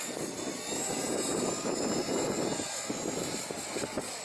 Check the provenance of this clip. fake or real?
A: real